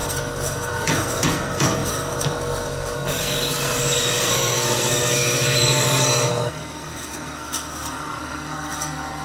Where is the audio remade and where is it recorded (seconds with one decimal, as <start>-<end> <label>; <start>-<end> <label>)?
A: 0.0-9.2 remade